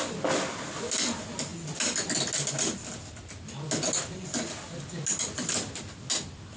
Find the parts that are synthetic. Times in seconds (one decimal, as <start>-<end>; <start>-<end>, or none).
none